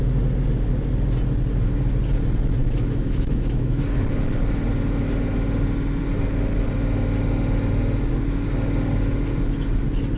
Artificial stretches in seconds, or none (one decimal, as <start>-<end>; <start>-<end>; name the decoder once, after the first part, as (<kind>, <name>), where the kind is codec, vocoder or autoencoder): 2.6-3.8 (autoencoder, DAC-VAE)